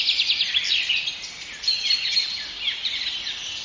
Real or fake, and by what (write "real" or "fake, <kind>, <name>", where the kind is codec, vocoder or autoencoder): real